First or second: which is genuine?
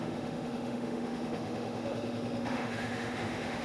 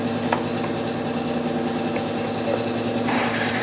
second